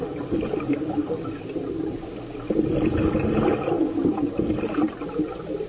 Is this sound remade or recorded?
recorded